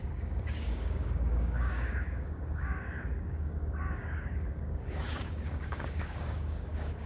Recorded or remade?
remade